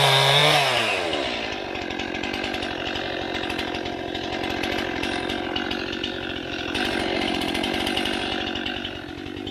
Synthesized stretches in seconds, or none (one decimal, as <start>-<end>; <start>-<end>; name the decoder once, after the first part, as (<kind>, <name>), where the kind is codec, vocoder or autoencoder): none